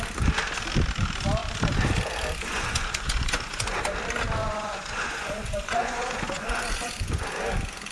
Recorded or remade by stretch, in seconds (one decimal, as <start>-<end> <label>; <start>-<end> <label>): 0.0-2.5 recorded; 2.5-3.8 remade; 3.8-4.4 recorded; 4.4-7.3 remade; 7.3-7.9 recorded